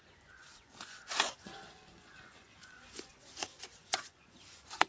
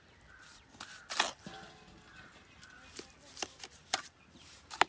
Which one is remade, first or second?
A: first